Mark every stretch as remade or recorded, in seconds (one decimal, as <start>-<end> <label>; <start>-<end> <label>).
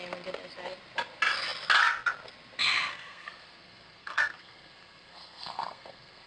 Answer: 0.0-2.9 recorded; 2.9-6.3 remade